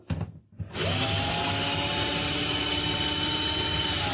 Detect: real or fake real